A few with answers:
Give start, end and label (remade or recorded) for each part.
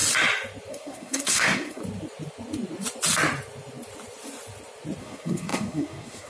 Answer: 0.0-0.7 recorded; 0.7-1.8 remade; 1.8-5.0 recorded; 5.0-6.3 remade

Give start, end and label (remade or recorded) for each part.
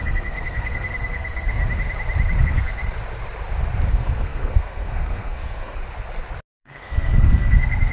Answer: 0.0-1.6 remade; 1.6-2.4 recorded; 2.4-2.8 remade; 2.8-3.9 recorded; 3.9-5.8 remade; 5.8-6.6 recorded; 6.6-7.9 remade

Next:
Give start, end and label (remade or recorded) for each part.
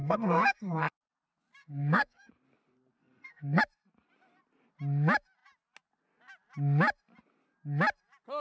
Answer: 0.0-0.9 remade; 0.9-1.6 recorded; 1.6-2.3 remade; 2.3-3.0 recorded; 3.0-3.6 remade; 3.6-8.4 recorded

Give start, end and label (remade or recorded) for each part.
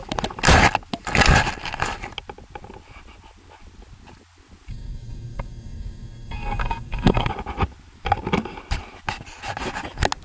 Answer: 0.0-4.7 recorded; 4.7-7.3 remade; 7.3-10.2 recorded